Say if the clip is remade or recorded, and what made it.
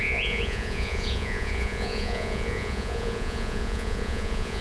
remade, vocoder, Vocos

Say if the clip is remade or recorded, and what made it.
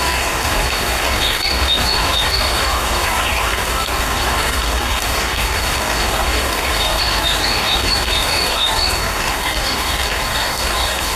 remade, codec, DAC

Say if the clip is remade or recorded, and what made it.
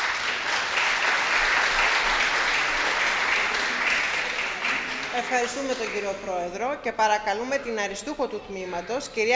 recorded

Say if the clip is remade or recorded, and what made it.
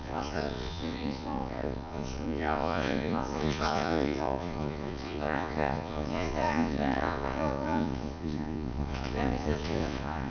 remade, vocoder, Vocos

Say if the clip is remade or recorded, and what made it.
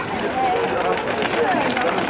recorded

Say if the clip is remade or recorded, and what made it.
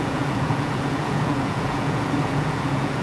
remade, vocoder, Vocos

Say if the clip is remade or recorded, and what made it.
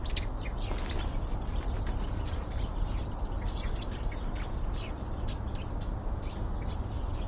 recorded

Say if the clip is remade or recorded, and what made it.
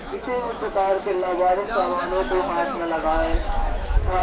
remade, autoencoder, DAC-VAE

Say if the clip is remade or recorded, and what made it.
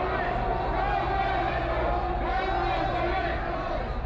recorded